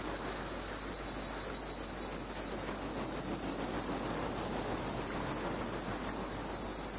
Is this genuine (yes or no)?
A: yes